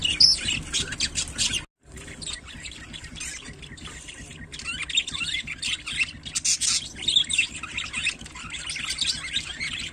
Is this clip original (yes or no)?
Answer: yes